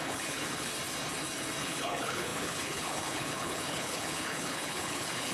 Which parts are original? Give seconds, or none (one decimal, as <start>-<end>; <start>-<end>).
0.7-1.6